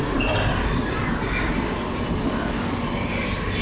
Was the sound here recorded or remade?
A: recorded